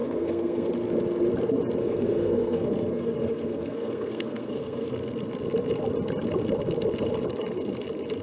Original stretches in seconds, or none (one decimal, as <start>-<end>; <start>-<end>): 0.7-1.8; 4.9-8.2